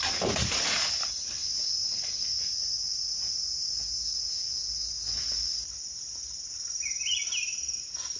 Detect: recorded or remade recorded